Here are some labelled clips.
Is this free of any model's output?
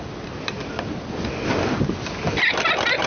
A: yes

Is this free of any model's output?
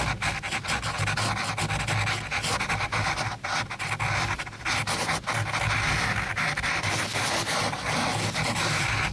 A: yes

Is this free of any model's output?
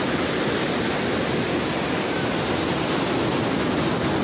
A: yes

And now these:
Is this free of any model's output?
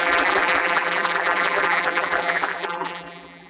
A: no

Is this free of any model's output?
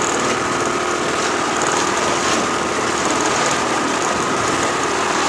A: no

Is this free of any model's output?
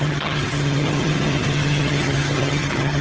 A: no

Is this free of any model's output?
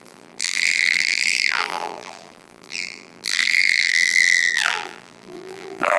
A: no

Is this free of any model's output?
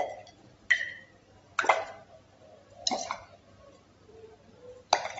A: yes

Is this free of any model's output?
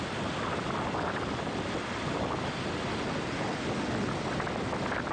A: yes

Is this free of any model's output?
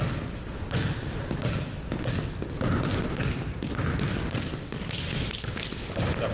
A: yes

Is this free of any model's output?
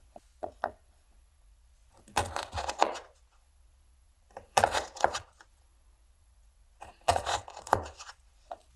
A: no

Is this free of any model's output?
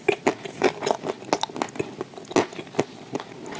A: yes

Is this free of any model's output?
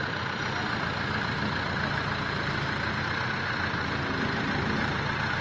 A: yes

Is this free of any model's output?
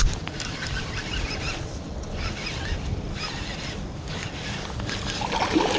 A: yes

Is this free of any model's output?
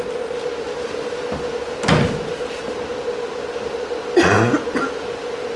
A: yes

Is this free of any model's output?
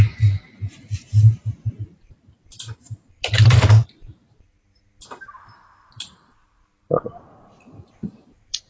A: no